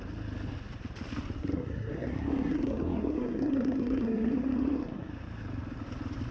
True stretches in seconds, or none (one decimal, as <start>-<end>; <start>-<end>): 0.0-1.4; 5.1-6.3